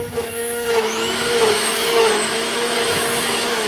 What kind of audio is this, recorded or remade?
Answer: remade